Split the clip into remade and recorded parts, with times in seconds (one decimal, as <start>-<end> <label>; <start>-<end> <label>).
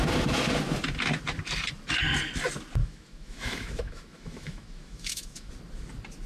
0.0-2.8 recorded; 2.8-5.5 remade; 5.5-6.3 recorded